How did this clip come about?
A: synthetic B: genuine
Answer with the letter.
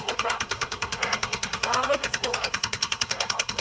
A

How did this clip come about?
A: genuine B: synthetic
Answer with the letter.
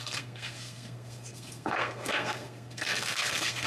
B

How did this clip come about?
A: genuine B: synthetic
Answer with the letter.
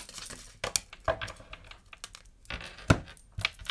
A